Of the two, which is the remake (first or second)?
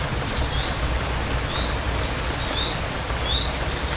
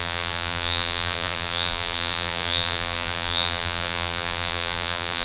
second